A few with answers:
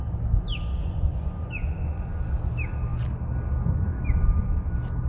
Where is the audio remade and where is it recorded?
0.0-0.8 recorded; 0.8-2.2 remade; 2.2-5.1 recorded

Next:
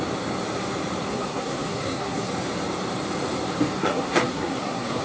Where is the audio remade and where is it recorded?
0.0-1.1 recorded; 1.1-2.3 remade; 2.3-3.8 recorded; 3.8-5.0 remade

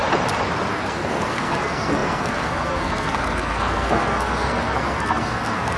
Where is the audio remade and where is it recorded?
0.0-0.7 recorded; 0.7-5.8 remade

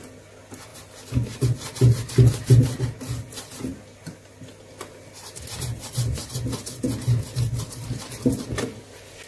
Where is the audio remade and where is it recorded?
0.0-9.3 recorded

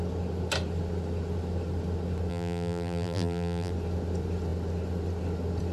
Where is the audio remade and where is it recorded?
0.0-2.3 recorded; 2.3-3.7 remade; 3.7-5.7 recorded